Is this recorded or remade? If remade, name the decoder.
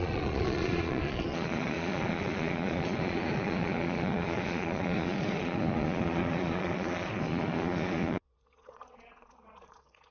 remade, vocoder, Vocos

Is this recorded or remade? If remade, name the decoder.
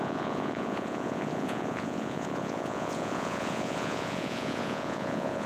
remade, vocoder, Vocos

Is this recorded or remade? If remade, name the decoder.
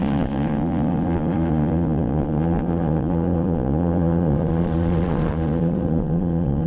remade, vocoder, Vocos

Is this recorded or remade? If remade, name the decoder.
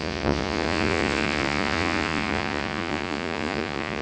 remade, vocoder, Vocos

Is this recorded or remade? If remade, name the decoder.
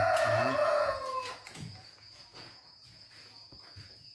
remade, vocoder, Vocos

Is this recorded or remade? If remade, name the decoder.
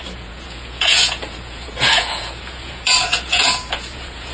remade, vocoder, Vocos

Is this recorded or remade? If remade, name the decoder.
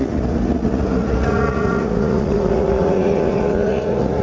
remade, vocoder, Vocos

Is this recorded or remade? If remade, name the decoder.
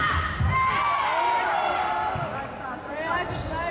recorded